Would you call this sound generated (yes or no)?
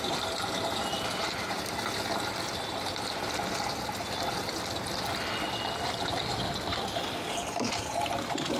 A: no